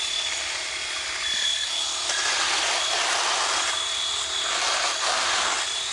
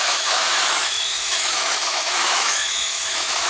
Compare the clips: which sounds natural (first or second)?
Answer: first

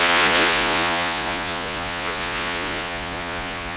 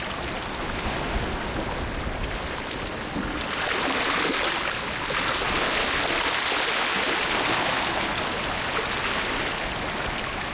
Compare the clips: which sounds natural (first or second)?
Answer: second